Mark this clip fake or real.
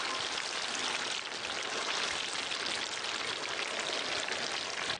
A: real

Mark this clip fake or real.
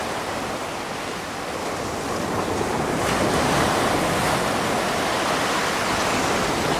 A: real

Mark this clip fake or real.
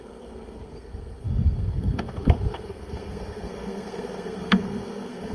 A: fake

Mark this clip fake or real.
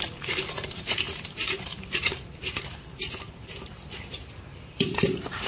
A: fake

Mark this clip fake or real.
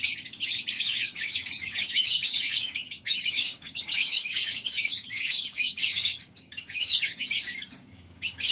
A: fake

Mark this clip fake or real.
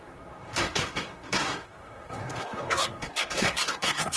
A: fake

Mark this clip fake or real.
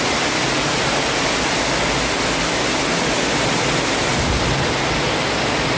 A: real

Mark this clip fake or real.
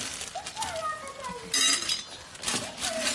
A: real